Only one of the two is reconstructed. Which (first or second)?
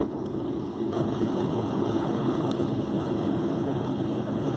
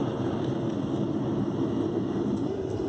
first